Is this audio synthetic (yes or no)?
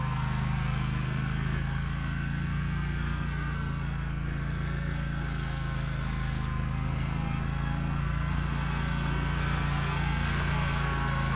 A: yes